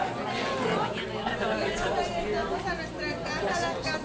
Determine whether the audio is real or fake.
real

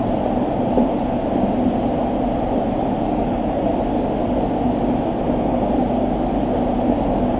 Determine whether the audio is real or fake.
real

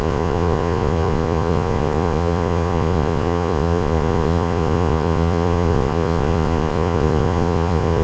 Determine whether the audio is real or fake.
fake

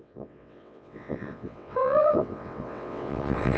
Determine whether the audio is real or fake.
fake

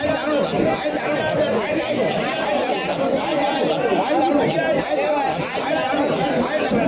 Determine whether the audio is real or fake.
real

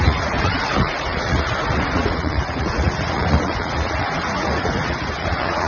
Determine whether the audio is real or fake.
fake